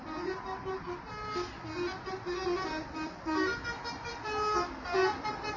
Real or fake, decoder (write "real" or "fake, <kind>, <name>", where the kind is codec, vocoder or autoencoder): real